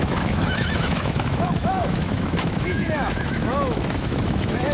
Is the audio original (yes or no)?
no